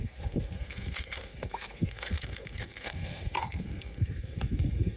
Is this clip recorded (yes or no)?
no